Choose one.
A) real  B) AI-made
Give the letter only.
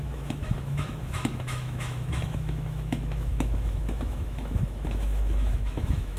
B